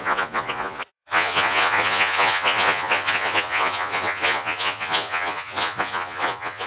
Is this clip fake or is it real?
fake